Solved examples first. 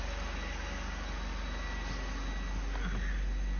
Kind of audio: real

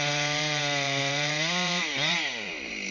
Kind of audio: fake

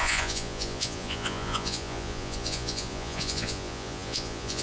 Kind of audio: fake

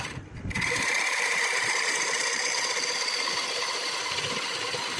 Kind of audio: fake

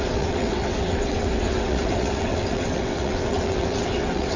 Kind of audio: fake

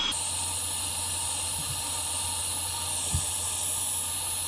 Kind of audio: real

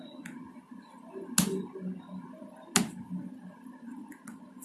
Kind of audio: real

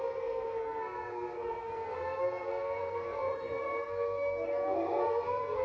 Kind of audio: fake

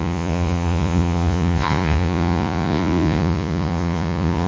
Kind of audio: fake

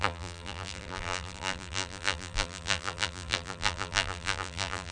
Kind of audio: fake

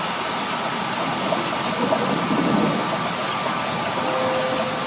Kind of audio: real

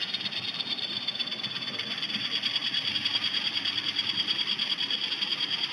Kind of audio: fake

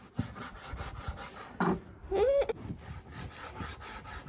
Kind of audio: real